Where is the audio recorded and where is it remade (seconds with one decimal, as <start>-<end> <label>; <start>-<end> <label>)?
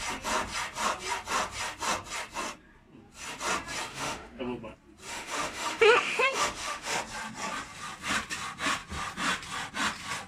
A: 0.0-3.9 recorded; 3.9-4.4 remade; 4.4-5.1 recorded; 5.1-7.0 remade; 7.0-10.3 recorded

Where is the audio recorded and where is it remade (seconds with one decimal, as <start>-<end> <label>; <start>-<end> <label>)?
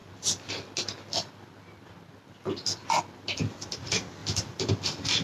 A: 0.0-5.2 recorded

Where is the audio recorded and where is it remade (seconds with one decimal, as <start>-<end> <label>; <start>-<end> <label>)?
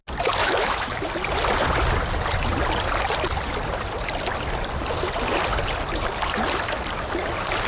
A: 0.0-0.4 recorded; 0.4-1.1 remade; 1.1-7.7 recorded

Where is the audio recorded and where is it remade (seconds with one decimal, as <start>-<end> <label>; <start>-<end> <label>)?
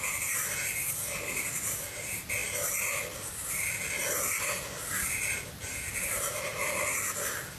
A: 0.0-7.6 recorded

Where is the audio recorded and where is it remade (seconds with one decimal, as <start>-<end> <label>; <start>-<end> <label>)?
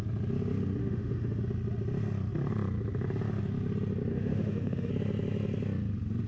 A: 0.0-0.8 recorded; 0.8-1.4 remade; 1.4-4.1 recorded; 4.1-4.9 remade; 4.9-6.3 recorded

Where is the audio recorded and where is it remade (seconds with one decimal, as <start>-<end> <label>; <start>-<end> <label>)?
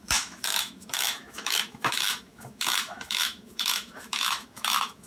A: 0.0-5.1 remade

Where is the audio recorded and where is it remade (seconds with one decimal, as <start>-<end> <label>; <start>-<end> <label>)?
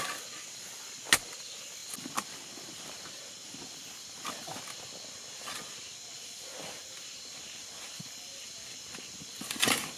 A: 0.0-10.0 recorded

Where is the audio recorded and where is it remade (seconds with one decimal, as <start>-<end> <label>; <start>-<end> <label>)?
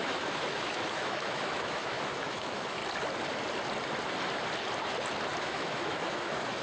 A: 0.0-2.8 remade; 2.8-5.4 recorded; 5.4-6.6 remade